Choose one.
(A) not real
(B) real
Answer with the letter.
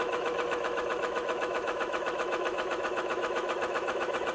A